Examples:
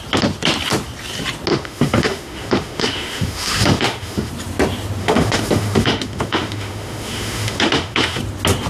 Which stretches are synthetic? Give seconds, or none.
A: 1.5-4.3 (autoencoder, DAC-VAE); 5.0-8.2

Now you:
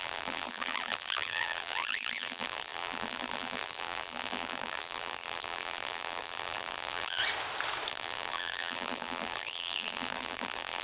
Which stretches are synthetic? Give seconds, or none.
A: 0.0-7.2 (vocoder, BigVGAN v2); 7.9-10.8

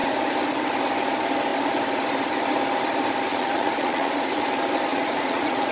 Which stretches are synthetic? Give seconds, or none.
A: 3.3-4.5 (vocoder, Vocos); 4.9-5.7